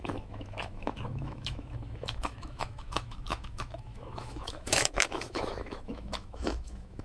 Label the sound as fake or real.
fake